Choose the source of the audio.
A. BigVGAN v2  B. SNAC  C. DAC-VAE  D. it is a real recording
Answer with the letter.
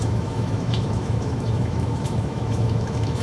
C